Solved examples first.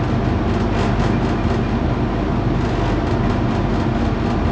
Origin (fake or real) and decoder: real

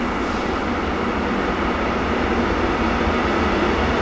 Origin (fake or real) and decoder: real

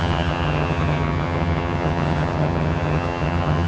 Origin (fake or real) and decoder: fake, vocoder, HiFi-GAN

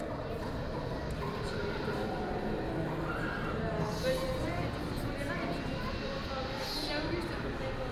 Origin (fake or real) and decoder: real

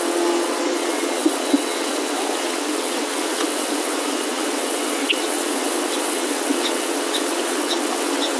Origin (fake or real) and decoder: fake, vocoder, WaveNeXt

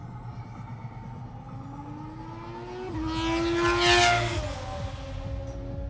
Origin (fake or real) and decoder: real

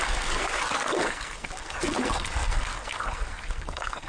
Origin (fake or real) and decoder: fake, codec, SNAC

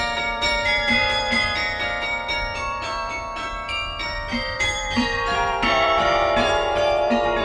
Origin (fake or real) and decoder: fake, vocoder, BigVGAN v2